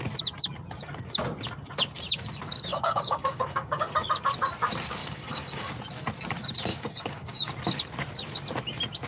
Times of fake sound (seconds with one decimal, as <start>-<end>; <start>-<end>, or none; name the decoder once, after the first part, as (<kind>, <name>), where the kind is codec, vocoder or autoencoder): 2.7-4.1 (codec, DAC); 5.0-5.7; 6.7-7.5